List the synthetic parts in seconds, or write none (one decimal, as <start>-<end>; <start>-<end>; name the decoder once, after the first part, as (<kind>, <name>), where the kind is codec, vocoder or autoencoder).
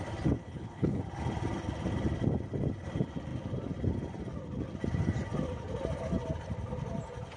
0.4-1.0 (codec, HILCodec)